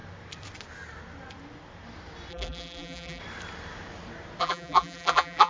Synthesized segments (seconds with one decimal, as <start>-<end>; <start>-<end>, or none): 2.3-3.2; 4.4-5.5